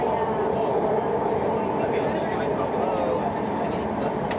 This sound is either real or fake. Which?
real